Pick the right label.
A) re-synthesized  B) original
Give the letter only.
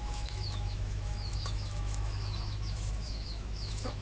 A